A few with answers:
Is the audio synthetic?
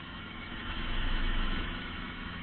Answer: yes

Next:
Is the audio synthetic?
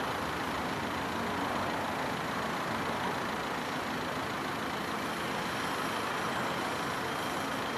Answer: no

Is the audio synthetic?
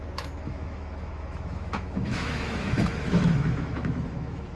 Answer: yes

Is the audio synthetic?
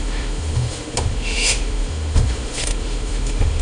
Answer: yes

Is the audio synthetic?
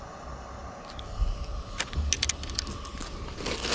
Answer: no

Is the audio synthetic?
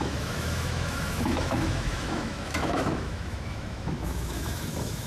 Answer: yes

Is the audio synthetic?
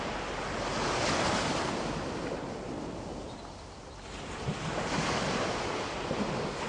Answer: no